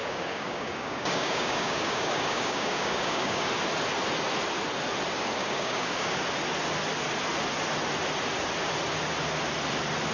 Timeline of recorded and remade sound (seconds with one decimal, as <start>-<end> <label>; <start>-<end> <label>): 0.0-3.5 remade; 3.5-5.4 recorded; 5.4-6.2 remade; 6.2-10.1 recorded